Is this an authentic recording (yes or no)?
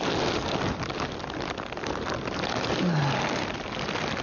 yes